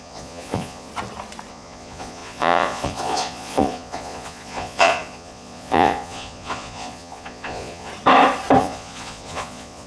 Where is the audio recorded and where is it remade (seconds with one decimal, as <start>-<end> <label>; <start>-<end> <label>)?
0.0-0.9 remade; 0.9-1.5 recorded; 1.5-7.9 remade; 7.9-8.6 recorded; 8.6-9.9 remade